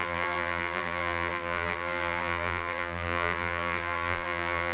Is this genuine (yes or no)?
no